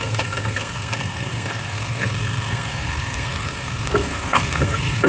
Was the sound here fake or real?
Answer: fake